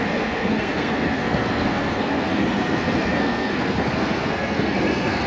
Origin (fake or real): fake